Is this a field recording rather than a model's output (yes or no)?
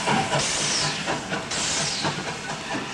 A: yes